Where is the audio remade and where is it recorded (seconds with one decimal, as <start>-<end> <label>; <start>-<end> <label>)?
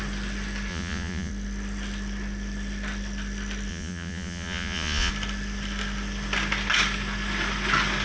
0.0-0.7 recorded; 0.7-1.3 remade; 1.3-3.7 recorded; 3.7-5.1 remade; 5.1-8.0 recorded